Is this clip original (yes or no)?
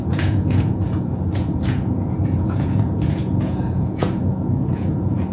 no